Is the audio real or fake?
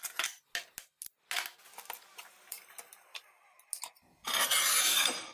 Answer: real